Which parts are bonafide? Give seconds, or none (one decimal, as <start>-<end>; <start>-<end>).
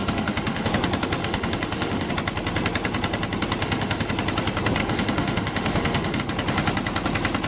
0.7-1.2; 2.1-3.6; 4.1-4.8; 6.2-7.5